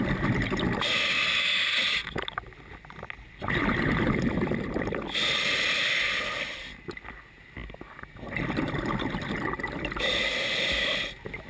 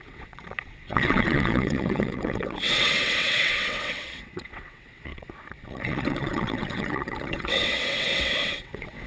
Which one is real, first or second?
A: first